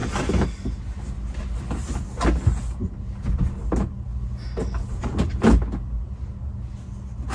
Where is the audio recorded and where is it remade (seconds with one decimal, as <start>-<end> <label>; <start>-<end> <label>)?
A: 0.0-7.3 recorded